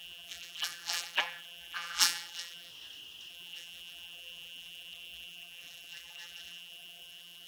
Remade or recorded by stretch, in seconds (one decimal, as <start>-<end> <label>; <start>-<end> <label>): 0.0-2.7 remade; 2.7-3.3 recorded; 3.3-7.5 remade

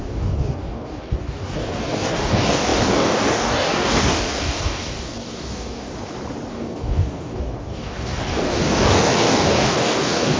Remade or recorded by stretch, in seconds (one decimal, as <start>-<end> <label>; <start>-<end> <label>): 0.0-5.9 remade; 5.9-6.5 recorded; 6.5-10.4 remade

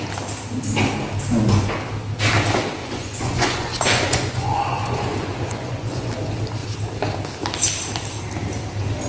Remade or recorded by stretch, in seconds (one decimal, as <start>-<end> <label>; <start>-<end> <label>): 0.0-2.8 recorded; 2.8-6.1 remade; 6.1-9.1 recorded

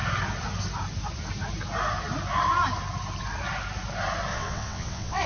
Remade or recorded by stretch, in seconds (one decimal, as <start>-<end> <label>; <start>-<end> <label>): 0.0-4.3 recorded; 4.3-5.3 remade

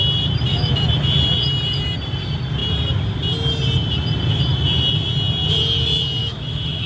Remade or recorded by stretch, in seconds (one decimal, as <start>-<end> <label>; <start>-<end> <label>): 0.0-0.5 recorded; 0.5-1.1 remade; 1.1-6.2 recorded; 6.2-6.9 remade

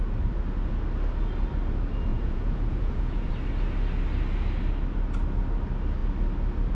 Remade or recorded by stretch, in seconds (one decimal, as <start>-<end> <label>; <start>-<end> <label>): 0.0-2.1 recorded; 2.1-3.3 remade; 3.3-6.7 recorded

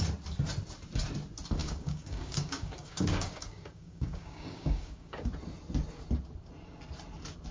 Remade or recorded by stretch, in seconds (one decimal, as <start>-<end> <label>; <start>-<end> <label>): 0.0-1.6 recorded; 1.6-5.3 remade; 5.3-7.5 recorded

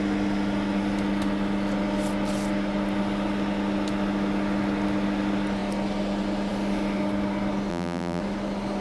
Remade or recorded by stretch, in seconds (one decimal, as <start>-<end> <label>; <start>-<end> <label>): 0.0-7.7 recorded; 7.7-8.2 remade; 8.2-8.8 recorded